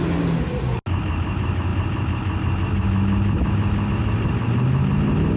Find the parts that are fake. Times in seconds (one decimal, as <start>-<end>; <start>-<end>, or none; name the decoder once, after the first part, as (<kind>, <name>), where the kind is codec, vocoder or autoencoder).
none